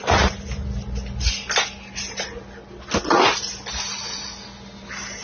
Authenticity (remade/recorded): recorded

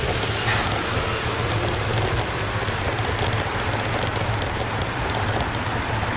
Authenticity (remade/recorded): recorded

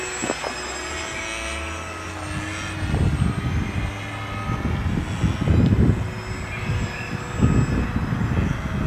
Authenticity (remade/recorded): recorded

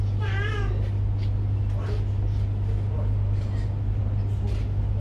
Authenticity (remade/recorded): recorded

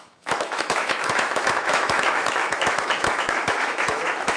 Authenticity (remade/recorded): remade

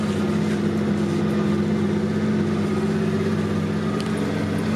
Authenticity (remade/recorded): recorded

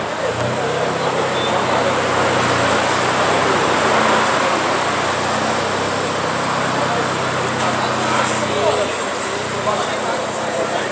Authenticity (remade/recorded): recorded